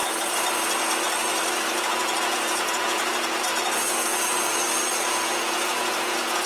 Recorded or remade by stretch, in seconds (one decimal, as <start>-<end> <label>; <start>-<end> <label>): 0.0-1.7 recorded; 1.7-3.1 remade; 3.1-4.9 recorded; 4.9-6.5 remade